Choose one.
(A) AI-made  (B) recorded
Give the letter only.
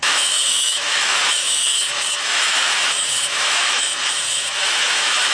A